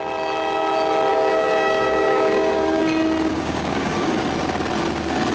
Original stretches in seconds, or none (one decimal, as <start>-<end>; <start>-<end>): 0.0-1.1; 2.8-3.3; 3.9-5.3